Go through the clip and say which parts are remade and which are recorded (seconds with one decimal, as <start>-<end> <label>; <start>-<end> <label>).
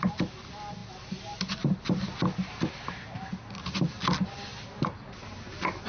0.0-5.9 recorded